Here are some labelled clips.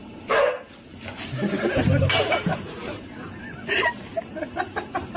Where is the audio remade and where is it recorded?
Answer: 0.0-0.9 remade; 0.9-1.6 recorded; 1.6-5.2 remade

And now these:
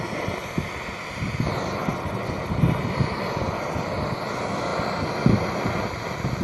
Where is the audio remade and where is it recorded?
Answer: 0.0-6.4 recorded

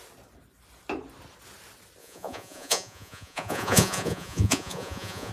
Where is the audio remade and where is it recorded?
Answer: 0.0-2.0 recorded; 2.0-5.3 remade

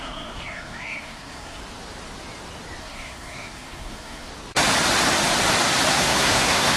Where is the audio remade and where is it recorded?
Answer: 0.0-1.6 remade; 1.6-2.8 recorded; 2.8-4.3 remade; 4.3-5.9 recorded; 5.9-6.8 remade

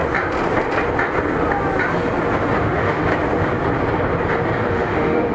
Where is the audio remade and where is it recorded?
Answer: 0.0-2.6 recorded; 2.6-3.1 remade; 3.1-4.7 recorded; 4.7-5.3 remade

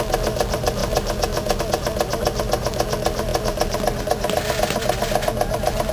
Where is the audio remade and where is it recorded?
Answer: 0.0-5.9 recorded

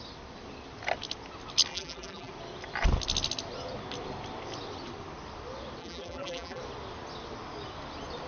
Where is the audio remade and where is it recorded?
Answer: 0.0-1.7 recorded; 1.7-2.3 remade; 2.3-5.8 recorded; 5.8-6.6 remade; 6.6-8.3 recorded